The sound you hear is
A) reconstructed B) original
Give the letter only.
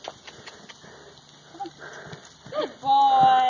B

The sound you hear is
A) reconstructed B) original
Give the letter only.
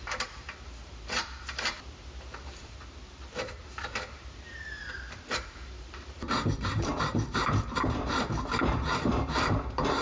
A